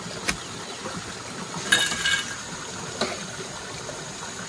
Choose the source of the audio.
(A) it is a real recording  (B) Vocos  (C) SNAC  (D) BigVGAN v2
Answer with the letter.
A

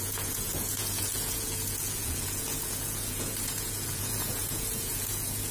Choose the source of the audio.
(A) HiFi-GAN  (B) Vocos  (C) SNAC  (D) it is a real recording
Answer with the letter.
B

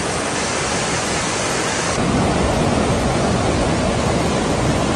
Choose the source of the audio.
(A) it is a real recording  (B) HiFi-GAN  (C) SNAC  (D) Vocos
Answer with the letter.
D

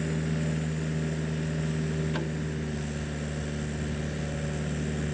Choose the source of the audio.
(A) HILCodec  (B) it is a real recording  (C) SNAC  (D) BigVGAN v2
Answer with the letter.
B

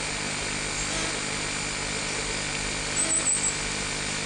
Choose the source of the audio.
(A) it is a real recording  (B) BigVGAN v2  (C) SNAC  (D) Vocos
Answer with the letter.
A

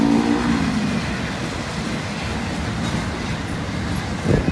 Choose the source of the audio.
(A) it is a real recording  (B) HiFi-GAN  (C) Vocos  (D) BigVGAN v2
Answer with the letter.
A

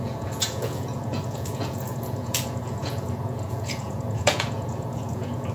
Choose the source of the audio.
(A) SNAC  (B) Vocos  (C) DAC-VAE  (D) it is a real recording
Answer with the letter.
B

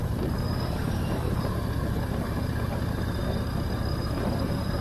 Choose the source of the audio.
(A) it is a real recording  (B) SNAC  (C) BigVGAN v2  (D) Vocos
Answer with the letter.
C